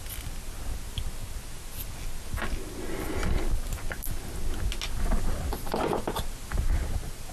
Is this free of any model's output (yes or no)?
yes